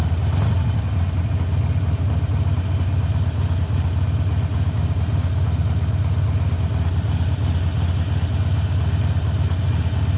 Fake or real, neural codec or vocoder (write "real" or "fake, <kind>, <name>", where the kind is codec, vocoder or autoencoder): real